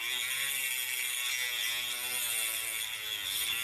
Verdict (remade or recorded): recorded